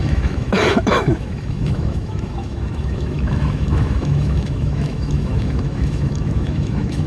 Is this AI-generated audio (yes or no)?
yes